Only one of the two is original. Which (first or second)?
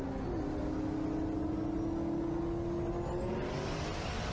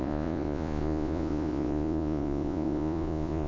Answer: first